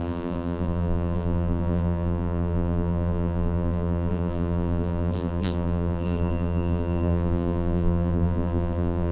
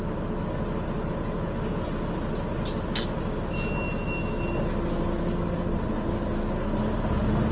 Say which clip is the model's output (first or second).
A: first